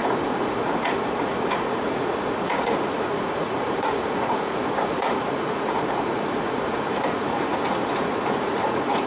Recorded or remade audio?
remade